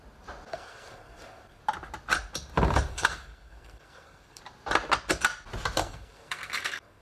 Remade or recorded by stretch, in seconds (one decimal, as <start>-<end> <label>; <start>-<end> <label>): 0.0-0.5 recorded; 0.5-1.6 remade; 1.6-2.9 recorded; 2.9-4.4 remade; 4.4-5.8 recorded; 5.8-7.0 remade